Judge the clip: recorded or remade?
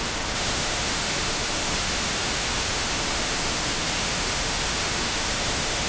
remade